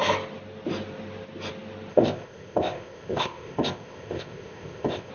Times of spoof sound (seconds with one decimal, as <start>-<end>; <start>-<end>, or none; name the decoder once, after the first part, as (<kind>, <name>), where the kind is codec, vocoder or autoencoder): 1.9-5.1 (codec, ZipCodec)